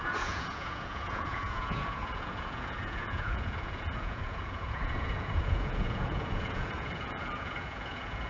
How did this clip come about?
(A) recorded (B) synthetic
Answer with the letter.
B